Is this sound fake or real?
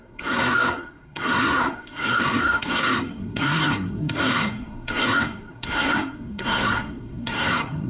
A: fake